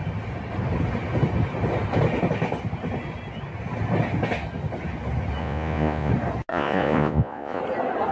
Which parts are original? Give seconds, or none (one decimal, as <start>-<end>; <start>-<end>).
0.0-5.4; 6.1-6.5; 7.6-8.1